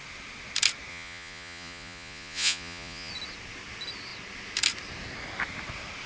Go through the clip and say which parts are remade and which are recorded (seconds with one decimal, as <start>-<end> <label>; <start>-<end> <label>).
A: 0.0-0.9 recorded; 0.9-3.1 remade; 3.1-6.1 recorded